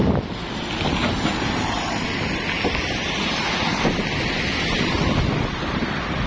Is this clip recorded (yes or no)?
yes